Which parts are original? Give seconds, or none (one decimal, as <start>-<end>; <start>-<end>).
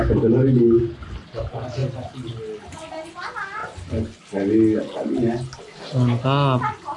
0.0-7.0